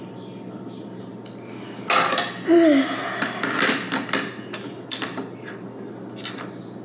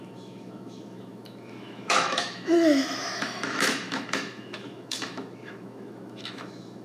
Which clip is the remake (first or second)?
second